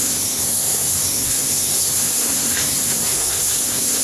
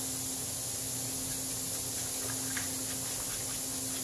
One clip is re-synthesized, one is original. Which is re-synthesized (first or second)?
first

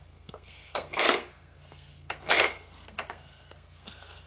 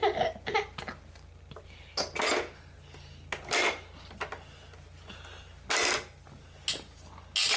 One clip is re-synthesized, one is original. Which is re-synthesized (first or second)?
first